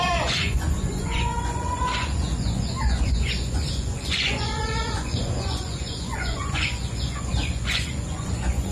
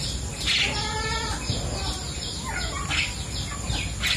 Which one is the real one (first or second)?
second